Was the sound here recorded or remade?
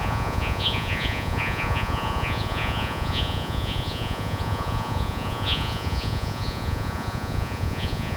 remade